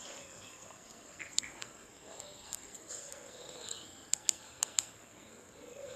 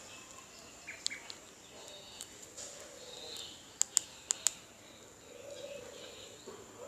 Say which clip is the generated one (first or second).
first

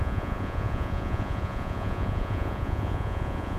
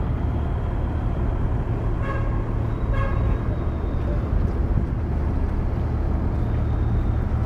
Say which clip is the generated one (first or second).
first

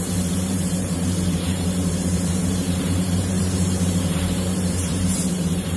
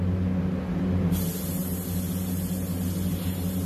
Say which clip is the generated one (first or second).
first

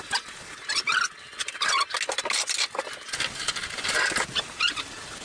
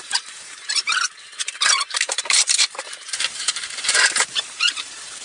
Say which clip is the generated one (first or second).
second